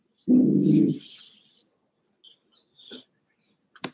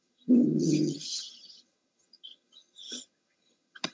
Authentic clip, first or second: first